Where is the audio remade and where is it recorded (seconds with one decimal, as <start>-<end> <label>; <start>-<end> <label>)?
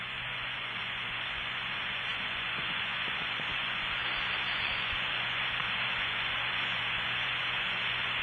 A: 0.0-4.0 remade; 4.0-4.5 recorded; 4.5-8.2 remade